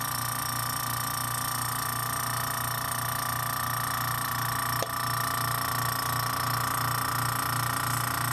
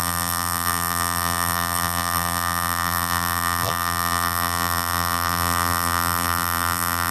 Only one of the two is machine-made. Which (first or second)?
second